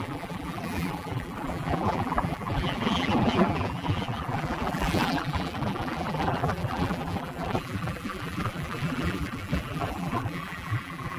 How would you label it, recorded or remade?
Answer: remade